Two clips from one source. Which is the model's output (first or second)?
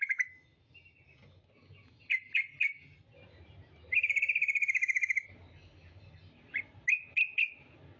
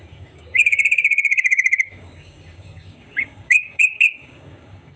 second